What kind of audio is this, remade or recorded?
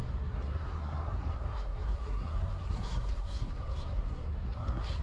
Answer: remade